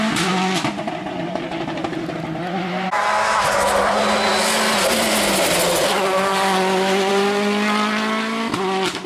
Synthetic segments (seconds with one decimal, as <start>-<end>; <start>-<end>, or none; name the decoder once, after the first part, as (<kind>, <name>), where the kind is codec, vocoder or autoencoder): none